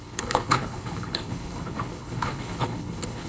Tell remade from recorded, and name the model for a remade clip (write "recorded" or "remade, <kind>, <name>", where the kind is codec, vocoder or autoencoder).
remade, codec, HILCodec